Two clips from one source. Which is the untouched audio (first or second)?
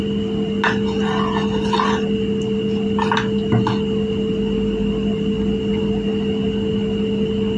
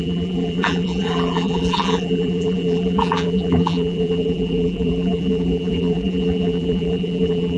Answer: first